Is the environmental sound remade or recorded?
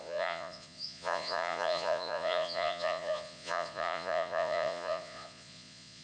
remade